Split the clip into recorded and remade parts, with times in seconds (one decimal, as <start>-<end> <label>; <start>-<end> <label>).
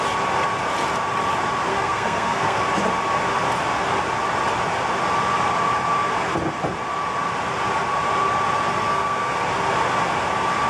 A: 0.0-1.7 recorded; 1.7-2.6 remade; 2.6-8.8 recorded; 8.8-9.3 remade; 9.3-10.7 recorded